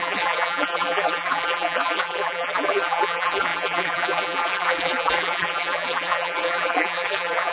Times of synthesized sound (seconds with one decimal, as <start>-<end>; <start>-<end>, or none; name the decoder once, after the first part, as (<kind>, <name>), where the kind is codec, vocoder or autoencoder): 0.0-7.5 (vocoder, BigVGAN v2)